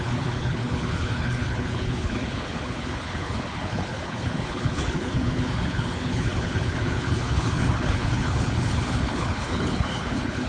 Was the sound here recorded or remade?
remade